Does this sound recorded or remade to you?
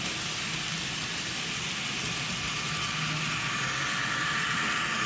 recorded